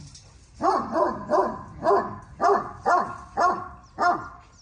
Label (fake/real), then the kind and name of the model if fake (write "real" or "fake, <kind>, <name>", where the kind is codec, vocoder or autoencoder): real